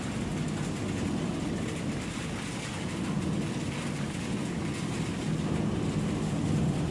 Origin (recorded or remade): recorded